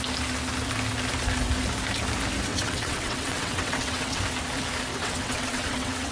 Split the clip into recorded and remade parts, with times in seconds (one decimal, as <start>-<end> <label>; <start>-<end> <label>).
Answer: 0.0-2.5 recorded; 2.5-4.2 remade; 4.2-4.9 recorded; 4.9-6.1 remade